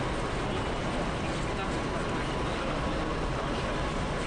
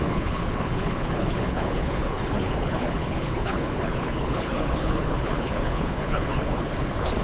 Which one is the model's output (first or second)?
second